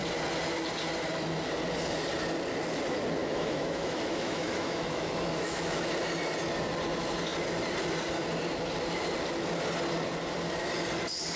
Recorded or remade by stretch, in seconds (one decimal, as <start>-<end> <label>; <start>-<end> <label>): 0.0-3.2 recorded; 3.2-5.9 remade; 5.9-11.4 recorded